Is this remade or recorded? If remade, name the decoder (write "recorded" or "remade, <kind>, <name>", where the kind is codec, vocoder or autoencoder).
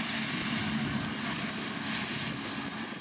recorded